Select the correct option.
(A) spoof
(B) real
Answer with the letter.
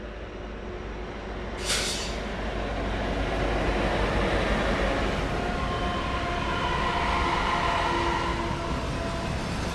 B